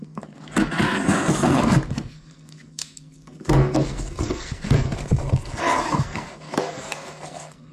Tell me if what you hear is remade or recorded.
remade